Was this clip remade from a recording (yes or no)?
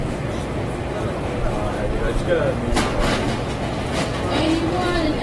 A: no